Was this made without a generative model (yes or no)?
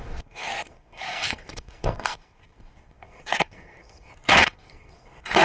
no